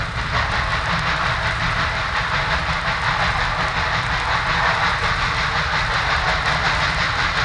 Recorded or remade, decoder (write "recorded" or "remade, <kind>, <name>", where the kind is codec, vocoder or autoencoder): recorded